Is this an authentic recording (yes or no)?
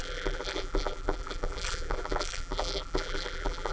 no